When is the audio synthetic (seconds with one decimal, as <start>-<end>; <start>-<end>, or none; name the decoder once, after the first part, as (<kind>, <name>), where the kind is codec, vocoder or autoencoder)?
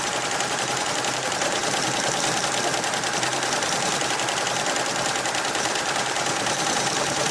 0.0-1.6 (vocoder, BigVGAN v2); 5.3-7.3